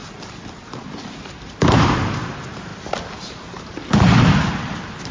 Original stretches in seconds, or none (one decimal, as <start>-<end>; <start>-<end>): 2.7-3.3; 3.8-4.5